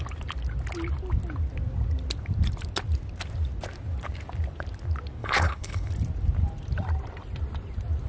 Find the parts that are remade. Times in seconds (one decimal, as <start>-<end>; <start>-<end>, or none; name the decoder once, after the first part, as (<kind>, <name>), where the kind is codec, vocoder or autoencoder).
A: 5.2-5.9 (codec, HILCodec)